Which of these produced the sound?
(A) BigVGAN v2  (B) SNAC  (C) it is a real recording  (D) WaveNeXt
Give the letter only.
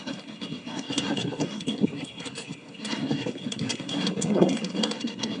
B